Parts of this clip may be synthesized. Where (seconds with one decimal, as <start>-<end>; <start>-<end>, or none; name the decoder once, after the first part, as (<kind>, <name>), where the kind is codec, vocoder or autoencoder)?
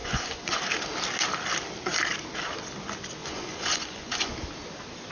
0.0-0.6 (vocoder, Vocos); 3.2-4.3